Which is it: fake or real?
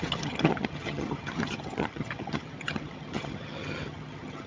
fake